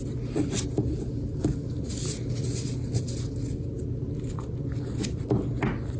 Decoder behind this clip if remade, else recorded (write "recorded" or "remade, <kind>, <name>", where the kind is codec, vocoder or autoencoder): recorded